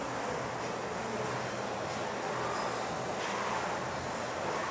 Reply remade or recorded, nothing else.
recorded